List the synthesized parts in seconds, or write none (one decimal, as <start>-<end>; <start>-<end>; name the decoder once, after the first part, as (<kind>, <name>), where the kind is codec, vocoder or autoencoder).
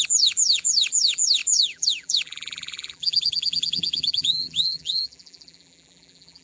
0.0-6.4 (vocoder, BigVGAN v2)